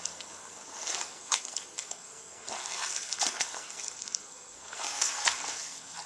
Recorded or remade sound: remade